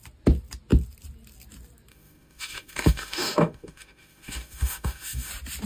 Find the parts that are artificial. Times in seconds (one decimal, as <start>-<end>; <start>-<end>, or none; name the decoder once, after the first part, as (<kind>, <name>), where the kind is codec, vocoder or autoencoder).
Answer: 1.9-5.3 (autoencoder, DAC-VAE)

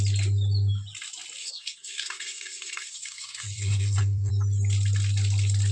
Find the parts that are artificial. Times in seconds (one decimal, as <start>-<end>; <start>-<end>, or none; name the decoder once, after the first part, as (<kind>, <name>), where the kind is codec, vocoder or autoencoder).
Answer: 1.4-4.3 (codec, SNAC)

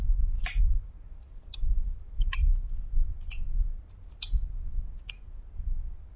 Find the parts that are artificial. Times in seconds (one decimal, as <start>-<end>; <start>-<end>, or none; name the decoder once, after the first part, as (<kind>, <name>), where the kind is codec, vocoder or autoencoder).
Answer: none

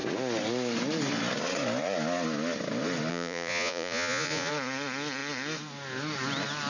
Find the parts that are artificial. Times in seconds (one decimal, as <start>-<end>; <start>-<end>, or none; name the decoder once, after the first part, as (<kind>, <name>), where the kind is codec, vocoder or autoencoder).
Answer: 3.1-4.5 (vocoder, Vocos)

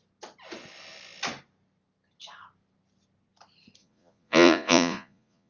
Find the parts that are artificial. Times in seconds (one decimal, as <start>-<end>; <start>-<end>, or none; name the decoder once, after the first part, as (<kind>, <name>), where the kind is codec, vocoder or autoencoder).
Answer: 3.8-5.5 (vocoder, Vocos)

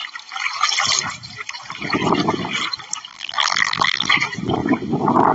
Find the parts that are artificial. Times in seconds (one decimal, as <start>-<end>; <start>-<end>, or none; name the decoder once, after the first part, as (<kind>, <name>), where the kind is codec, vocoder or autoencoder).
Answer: 3.1-4.1 (vocoder, BigVGAN v2)

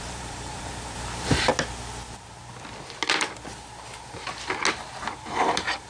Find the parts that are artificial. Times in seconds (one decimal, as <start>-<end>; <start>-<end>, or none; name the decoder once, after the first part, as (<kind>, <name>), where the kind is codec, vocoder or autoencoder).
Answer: 0.0-1.5 (vocoder, BigVGAN v2); 5.0-5.9